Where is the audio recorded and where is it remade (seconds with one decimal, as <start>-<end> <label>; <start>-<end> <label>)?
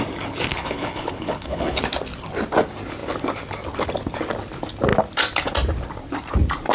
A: 0.0-0.5 recorded; 0.5-1.8 remade; 1.8-6.7 recorded